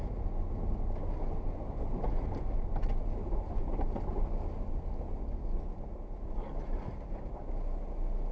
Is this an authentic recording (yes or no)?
yes